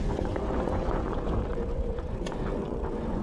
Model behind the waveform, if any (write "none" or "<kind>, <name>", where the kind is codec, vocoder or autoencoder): vocoder, Vocos